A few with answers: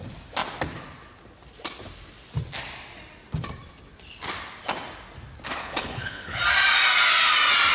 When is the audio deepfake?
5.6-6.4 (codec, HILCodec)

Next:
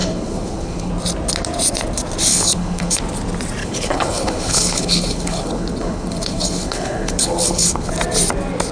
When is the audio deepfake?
0.0-0.9 (codec, HILCodec); 2.3-3.0; 3.6-7.9

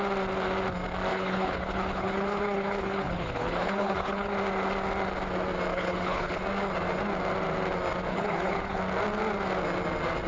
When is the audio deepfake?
1.1-4.3 (codec, HILCodec); 5.7-6.4; 8.1-8.8

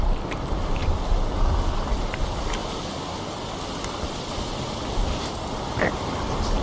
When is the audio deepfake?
none

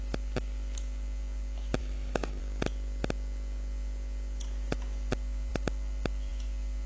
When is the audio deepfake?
1.8-2.4 (codec, HILCodec)

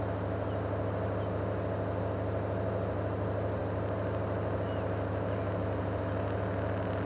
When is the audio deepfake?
none